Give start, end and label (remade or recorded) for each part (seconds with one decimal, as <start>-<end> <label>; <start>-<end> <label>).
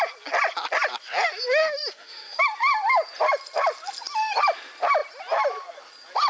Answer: 0.0-1.6 recorded; 1.6-2.4 remade; 2.4-6.3 recorded